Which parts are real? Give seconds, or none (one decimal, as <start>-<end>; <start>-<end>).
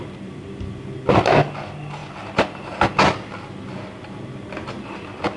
0.0-5.4